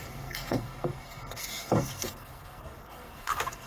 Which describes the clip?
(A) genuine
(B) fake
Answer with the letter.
B